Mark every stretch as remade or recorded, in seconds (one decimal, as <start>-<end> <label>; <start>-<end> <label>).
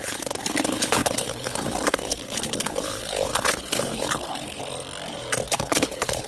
0.0-4.6 remade; 4.6-5.5 recorded; 5.5-6.3 remade